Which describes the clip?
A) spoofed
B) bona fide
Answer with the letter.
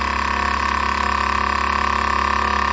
B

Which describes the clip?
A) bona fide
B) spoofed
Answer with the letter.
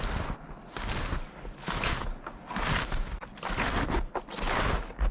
A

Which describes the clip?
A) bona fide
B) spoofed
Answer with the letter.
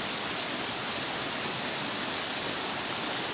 A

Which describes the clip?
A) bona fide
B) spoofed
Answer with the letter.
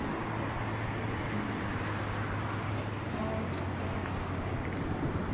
B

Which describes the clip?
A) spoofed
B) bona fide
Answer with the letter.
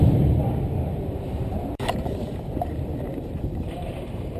A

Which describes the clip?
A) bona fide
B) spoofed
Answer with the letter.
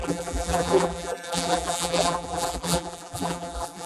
B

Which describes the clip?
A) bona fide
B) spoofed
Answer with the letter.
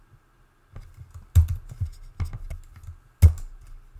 A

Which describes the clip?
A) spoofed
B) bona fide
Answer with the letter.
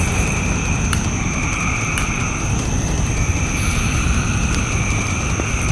A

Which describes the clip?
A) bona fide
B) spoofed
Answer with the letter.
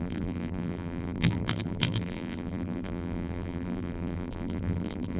B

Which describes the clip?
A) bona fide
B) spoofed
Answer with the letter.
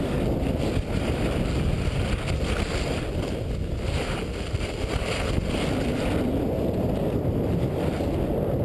A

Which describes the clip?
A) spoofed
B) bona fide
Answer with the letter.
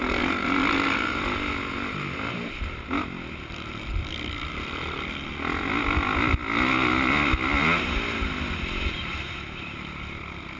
B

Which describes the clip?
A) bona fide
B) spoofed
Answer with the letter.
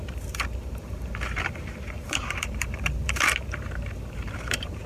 B